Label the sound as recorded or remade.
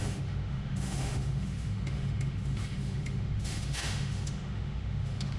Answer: remade